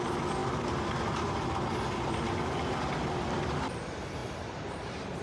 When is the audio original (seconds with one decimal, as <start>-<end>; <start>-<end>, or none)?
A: 0.0-4.2